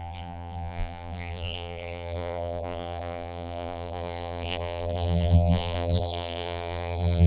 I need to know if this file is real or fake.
fake